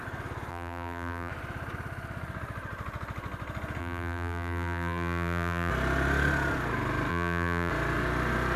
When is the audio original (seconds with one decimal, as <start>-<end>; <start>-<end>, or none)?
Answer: 0.0-0.5; 1.3-3.8; 5.7-7.1; 7.7-8.6

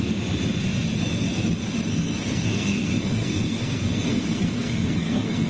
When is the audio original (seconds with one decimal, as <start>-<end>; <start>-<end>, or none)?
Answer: 0.0-1.9

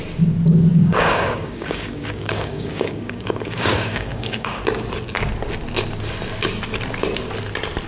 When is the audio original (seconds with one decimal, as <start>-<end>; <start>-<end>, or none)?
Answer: 0.0-0.7; 4.6-7.9

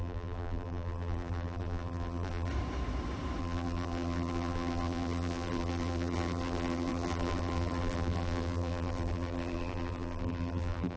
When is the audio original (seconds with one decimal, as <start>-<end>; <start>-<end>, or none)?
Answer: 2.5-3.4